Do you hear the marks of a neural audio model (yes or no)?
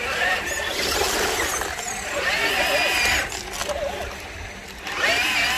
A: no